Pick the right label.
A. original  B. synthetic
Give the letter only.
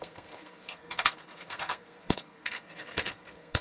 B